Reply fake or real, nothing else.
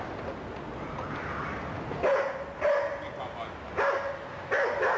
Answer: real